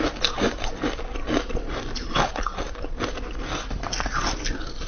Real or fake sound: real